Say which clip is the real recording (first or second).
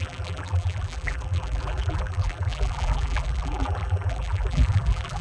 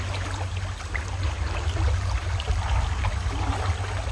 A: second